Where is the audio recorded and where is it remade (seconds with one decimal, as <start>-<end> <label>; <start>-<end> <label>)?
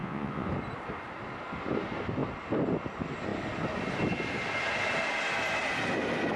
0.0-0.5 remade; 0.5-6.4 recorded